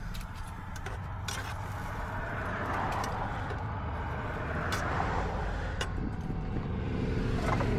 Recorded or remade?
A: remade